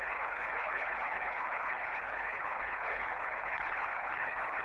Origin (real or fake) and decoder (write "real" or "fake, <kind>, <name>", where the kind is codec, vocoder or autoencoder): fake, codec, HILCodec